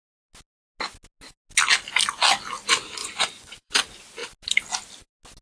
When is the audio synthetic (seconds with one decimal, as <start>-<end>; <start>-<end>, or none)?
3.0-3.7